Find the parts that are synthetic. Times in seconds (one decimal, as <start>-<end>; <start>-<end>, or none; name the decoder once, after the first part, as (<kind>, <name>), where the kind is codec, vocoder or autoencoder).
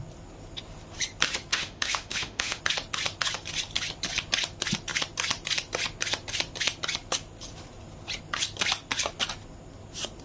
1.5-2.6 (autoencoder, DAC-VAE)